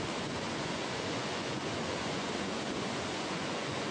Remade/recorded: remade